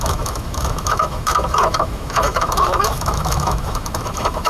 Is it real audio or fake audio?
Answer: fake